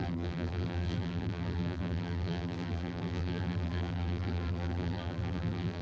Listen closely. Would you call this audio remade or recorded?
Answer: remade